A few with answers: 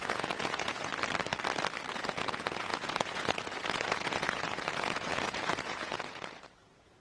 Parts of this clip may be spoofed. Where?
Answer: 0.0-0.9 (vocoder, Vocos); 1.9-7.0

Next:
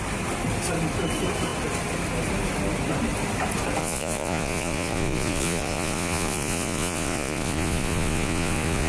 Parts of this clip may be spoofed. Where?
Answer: 3.8-8.9 (vocoder, Vocos)